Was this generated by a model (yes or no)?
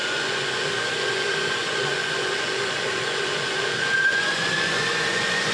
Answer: yes